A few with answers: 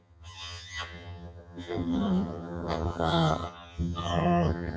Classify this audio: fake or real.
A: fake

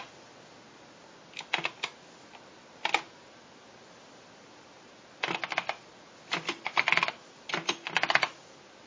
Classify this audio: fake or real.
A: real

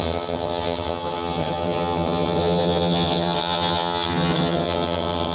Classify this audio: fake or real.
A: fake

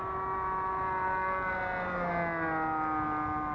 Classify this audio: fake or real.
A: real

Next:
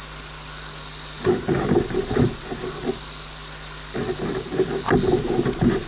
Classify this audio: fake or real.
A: real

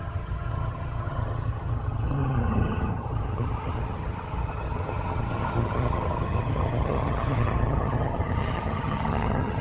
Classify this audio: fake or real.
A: fake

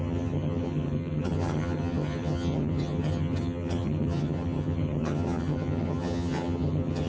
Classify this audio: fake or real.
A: fake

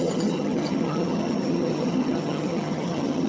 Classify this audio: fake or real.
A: fake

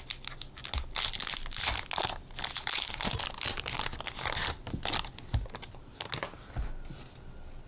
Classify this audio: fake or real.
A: real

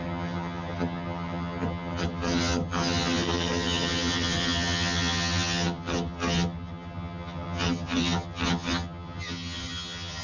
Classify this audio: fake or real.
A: fake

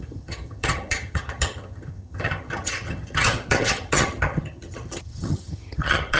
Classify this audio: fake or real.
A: fake